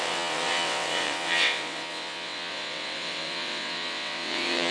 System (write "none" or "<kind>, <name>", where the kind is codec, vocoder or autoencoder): vocoder, WaveNeXt